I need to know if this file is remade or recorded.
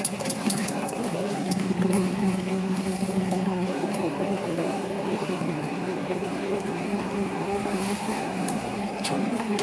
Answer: remade